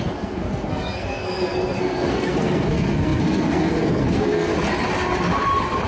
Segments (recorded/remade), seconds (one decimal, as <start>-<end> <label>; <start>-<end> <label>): 0.0-4.5 remade; 4.5-5.9 recorded